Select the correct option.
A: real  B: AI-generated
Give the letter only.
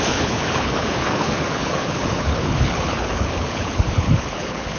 B